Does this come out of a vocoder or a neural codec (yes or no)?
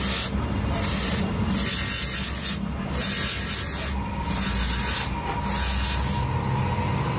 no